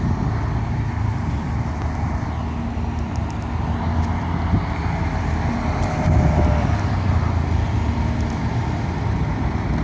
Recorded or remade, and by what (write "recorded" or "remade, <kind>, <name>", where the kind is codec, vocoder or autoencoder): recorded